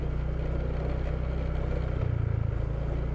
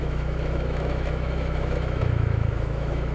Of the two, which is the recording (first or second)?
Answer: first